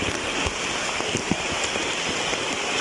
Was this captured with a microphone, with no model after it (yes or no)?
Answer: yes